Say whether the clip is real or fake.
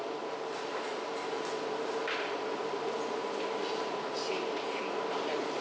real